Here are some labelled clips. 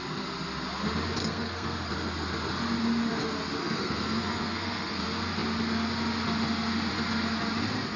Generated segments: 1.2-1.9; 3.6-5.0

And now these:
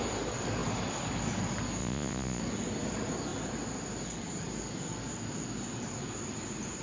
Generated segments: 1.8-2.4

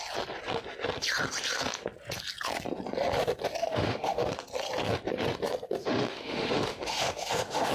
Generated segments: 3.6-4.3; 5.8-7.7

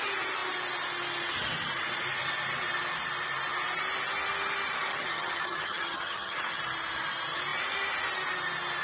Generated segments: 4.9-6.6

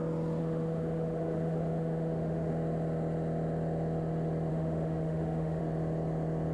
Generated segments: 0.4-2.5; 4.5-5.6

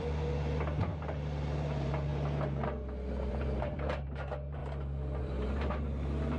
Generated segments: 0.0-2.1; 3.3-4.6; 5.2-6.4